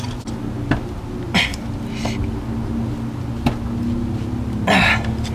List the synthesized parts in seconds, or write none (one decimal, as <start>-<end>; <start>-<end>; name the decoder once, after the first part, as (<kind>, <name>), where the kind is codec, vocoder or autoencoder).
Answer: 1.5-2.0 (vocoder, BigVGAN v2)